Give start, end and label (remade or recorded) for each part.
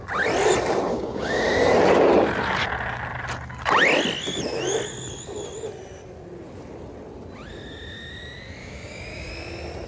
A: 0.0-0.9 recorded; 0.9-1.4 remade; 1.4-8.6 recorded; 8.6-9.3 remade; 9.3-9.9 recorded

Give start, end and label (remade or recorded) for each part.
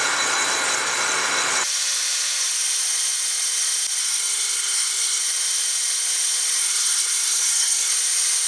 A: 0.0-4.0 recorded; 4.0-5.2 remade; 5.2-6.6 recorded; 6.6-7.9 remade; 7.9-8.5 recorded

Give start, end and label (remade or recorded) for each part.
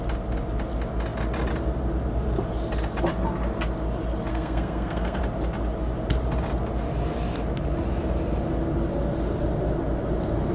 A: 0.0-4.3 recorded; 4.3-5.2 remade; 5.2-10.5 recorded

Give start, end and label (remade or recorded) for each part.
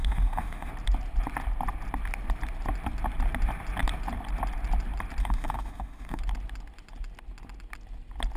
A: 0.0-0.7 remade; 0.7-5.2 recorded; 5.2-6.2 remade; 6.2-8.4 recorded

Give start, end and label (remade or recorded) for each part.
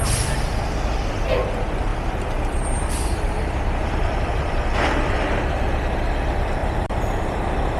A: 0.0-1.9 recorded; 1.9-5.4 remade; 5.4-6.6 recorded; 6.6-7.8 remade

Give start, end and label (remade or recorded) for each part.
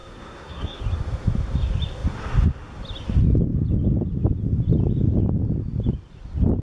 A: 0.0-0.8 remade; 0.8-6.6 recorded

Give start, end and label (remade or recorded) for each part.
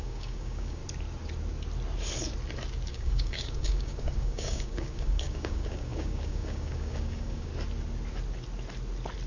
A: 0.0-0.8 remade; 0.8-2.9 recorded; 2.9-7.5 remade; 7.5-9.3 recorded